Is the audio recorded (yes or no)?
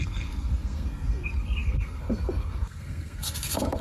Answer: no